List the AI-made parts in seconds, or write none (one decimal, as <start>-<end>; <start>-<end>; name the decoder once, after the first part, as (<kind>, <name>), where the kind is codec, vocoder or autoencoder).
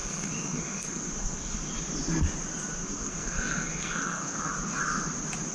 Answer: 0.0-1.7 (codec, SNAC); 2.8-4.5